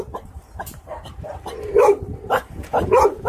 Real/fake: fake